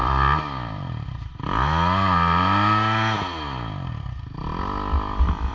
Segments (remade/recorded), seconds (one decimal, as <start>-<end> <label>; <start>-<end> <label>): 0.0-1.3 remade; 1.3-5.5 recorded